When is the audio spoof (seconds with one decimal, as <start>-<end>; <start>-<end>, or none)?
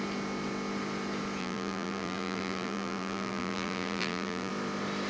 1.4-4.5